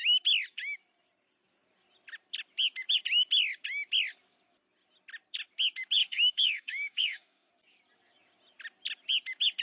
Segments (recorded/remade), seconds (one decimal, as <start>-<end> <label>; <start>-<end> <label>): 0.0-6.0 recorded; 6.0-7.5 remade; 7.5-9.6 recorded